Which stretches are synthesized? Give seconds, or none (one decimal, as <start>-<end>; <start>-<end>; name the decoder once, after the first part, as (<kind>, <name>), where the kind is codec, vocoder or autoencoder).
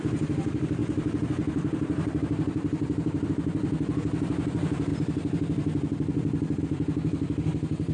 0.8-3.3 (vocoder, BigVGAN v2)